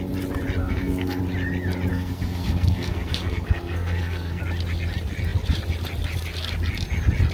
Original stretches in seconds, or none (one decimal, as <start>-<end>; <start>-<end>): 0.0-0.6; 1.2-1.9; 4.4-7.3